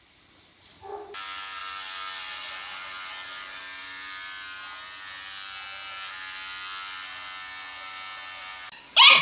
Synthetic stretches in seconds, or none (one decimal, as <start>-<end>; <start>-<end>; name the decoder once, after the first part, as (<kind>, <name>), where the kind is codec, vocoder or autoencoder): 1.6-2.5 (vocoder, BigVGAN v2)